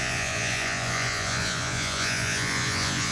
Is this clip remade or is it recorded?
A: remade